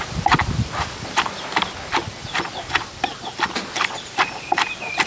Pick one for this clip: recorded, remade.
recorded